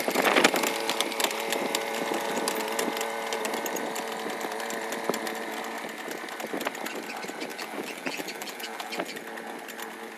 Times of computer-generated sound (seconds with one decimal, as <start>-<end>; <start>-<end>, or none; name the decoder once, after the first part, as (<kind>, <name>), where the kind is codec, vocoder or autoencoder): 7.5-9.2 (vocoder, BigVGAN v2)